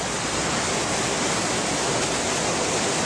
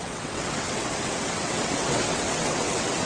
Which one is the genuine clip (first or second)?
first